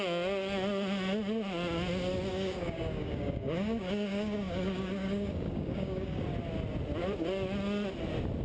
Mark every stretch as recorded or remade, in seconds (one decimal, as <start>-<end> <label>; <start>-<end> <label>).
0.0-2.3 recorded; 2.3-6.2 remade; 6.2-8.4 recorded